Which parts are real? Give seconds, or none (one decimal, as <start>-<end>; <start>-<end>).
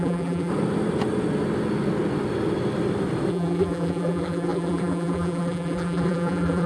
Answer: 0.5-3.3